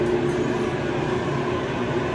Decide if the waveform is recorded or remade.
remade